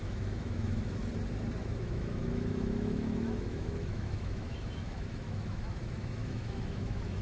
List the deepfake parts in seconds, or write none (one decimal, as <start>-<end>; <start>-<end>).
0.0-1.0; 1.6-7.2